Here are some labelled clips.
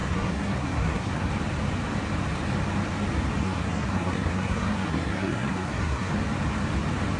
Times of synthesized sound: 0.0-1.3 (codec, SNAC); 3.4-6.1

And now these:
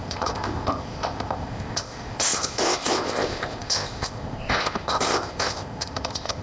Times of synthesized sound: 0.0-6.4 (codec, ZipCodec)